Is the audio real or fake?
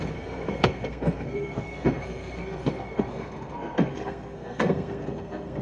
fake